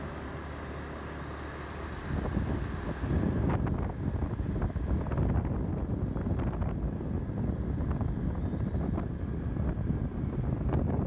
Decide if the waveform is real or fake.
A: real